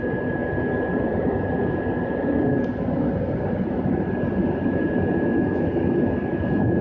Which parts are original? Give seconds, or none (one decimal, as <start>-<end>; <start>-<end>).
0.0-6.8